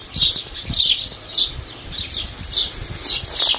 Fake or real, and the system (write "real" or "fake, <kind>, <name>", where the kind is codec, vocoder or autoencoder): real